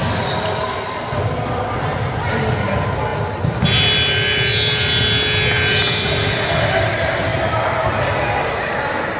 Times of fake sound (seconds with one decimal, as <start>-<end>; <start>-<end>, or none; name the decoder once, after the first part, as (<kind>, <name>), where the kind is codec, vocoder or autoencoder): none

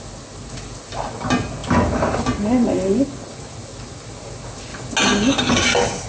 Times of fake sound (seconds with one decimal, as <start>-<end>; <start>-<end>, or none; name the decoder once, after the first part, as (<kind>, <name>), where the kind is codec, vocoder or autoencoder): none

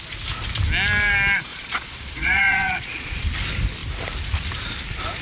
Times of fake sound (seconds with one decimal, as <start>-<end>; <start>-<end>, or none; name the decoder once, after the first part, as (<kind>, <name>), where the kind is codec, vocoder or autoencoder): 1.5-3.2 (vocoder, Vocos)

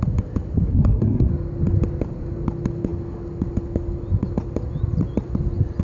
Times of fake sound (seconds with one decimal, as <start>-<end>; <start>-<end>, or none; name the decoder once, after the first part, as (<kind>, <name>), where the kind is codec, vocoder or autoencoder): 0.7-1.3 (codec, SNAC)

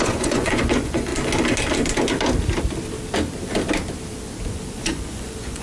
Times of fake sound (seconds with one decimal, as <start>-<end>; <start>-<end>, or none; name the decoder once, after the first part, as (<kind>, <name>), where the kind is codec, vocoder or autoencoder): 0.0-1.1 (vocoder, Vocos); 4.5-5.6